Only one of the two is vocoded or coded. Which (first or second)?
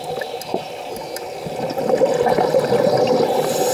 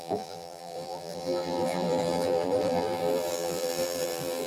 second